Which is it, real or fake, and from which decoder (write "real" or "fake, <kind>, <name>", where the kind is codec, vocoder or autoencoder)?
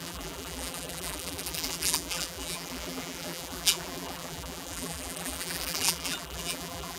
fake, vocoder, BigVGAN v2